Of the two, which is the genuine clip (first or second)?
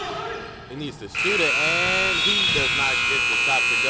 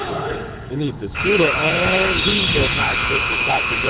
first